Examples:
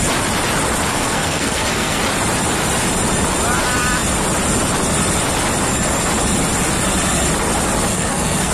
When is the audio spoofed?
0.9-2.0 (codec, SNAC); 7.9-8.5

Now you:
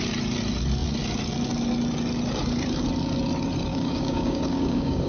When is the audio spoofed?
3.7-5.1 (codec, DAC)

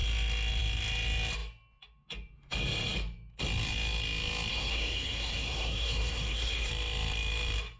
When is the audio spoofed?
4.5-6.7 (codec, SNAC)

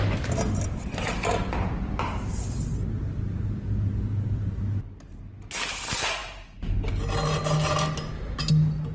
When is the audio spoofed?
none

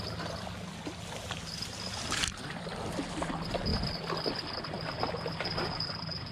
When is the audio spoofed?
none

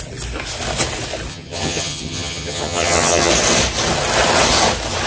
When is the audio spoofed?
1.3-3.3 (vocoder, HiFi-GAN)

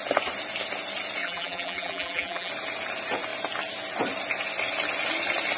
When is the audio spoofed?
1.2-2.5 (vocoder, BigVGAN v2)

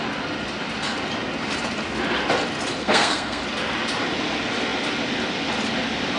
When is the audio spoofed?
2.8-3.4 (codec, SNAC)